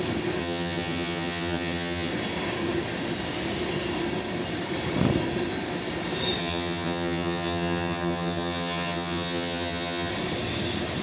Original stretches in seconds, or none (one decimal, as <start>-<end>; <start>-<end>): 0.0-0.4; 2.1-6.4; 10.1-11.0